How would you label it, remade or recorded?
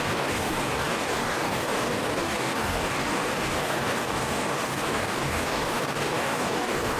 remade